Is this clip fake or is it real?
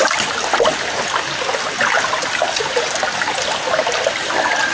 real